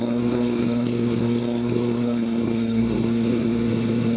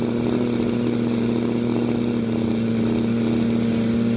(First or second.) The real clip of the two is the second